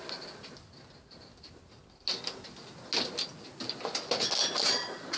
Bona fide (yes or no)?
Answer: yes